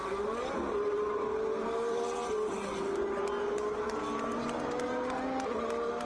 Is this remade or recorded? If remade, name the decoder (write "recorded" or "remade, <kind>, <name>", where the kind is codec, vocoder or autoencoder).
recorded